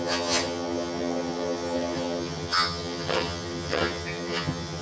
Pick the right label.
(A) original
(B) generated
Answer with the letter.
B